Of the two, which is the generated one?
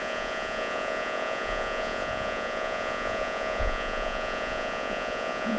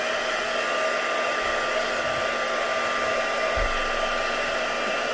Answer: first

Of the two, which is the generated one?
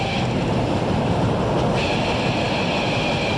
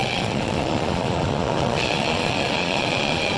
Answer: second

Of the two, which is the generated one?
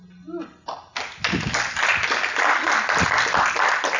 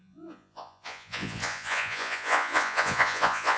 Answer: second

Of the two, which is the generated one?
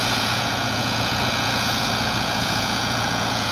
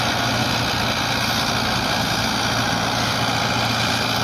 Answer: first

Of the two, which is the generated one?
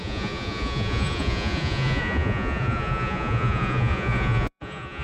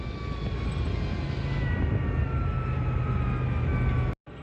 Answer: first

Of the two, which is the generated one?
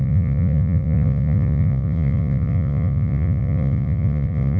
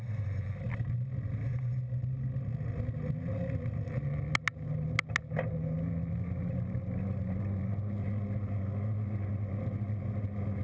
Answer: first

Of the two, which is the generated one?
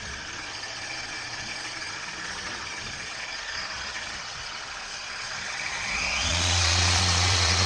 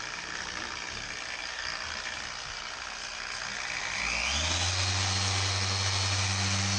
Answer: first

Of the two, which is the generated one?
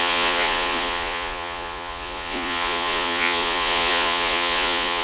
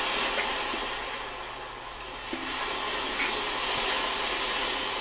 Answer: first